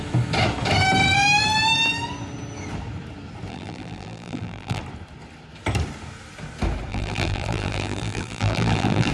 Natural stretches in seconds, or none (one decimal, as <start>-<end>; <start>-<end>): 0.0-3.5; 4.8-6.9